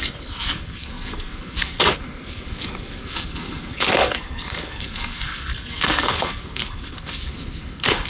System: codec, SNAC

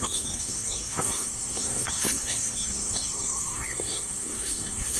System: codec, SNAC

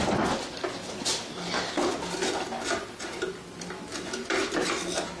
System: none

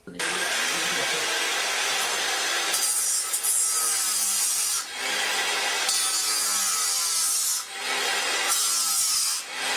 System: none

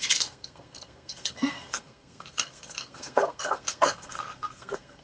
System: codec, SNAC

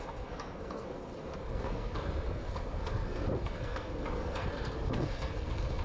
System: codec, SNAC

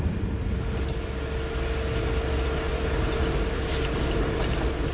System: none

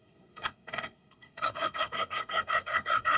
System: codec, SNAC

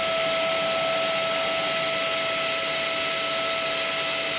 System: none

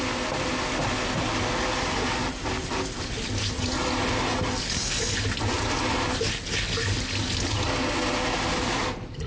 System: none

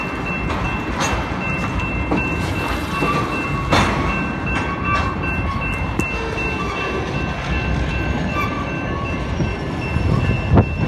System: none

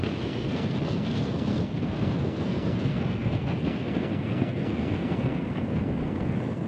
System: codec, SNAC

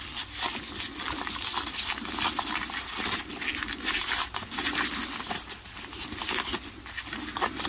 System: none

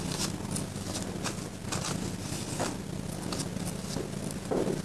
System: none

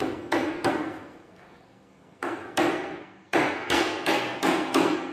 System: codec, SNAC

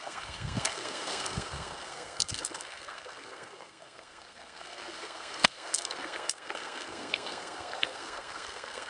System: codec, SNAC